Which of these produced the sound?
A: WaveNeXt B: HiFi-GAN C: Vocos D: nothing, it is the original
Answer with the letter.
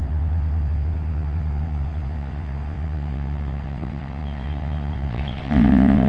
A